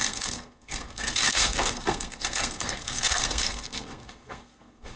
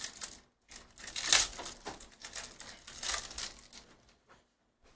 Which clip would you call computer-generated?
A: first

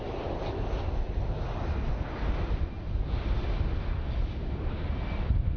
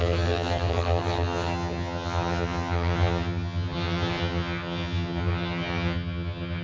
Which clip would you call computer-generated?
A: second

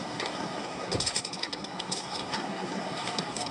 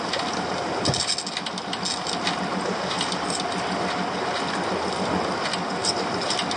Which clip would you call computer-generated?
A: first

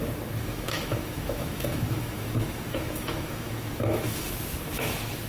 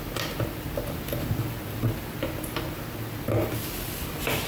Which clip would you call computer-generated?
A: first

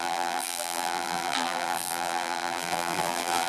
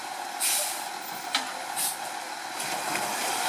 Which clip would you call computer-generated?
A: first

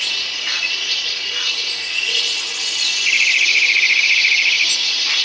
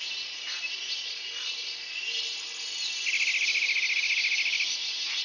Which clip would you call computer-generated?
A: first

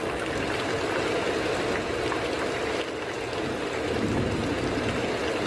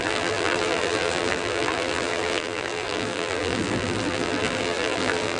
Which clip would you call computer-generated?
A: second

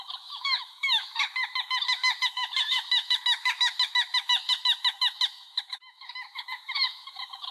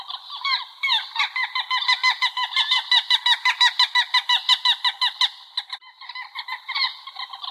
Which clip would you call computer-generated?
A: first